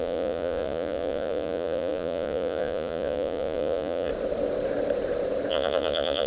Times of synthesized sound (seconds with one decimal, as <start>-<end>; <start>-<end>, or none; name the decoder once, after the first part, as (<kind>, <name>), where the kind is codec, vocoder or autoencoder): 0.0-4.1 (vocoder, Vocos); 5.5-6.3